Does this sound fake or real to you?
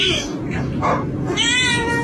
real